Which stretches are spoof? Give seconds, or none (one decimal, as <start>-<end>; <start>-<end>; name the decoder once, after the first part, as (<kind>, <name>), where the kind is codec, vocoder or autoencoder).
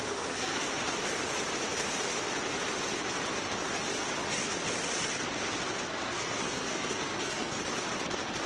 0.0-0.7 (codec, SNAC); 5.9-7.6